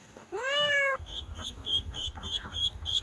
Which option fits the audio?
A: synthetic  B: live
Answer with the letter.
A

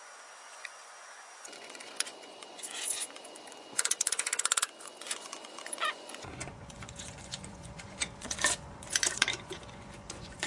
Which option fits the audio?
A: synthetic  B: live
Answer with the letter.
A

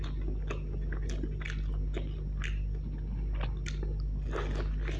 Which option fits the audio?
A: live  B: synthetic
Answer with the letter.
A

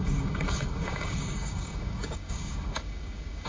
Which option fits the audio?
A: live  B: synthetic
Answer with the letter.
B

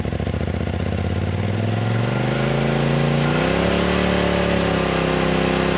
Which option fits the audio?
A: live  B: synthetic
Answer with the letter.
A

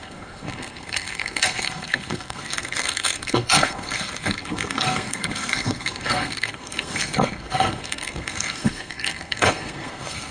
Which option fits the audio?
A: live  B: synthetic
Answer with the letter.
B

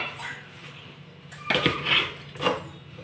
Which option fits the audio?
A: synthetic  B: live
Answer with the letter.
B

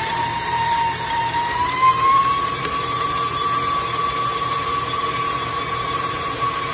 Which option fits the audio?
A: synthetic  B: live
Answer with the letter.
A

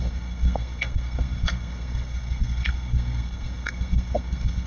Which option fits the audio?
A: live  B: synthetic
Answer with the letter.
B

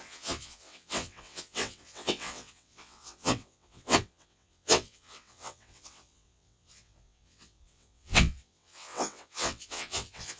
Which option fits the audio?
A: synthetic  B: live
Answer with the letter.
A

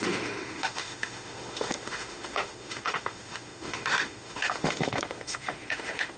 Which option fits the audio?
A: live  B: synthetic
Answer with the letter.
B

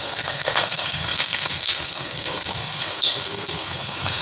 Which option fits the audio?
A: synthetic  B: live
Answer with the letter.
A